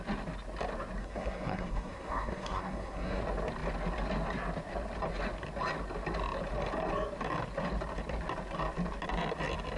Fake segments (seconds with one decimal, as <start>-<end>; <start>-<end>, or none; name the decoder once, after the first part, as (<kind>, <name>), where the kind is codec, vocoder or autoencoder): 1.0-3.2 (codec, SNAC)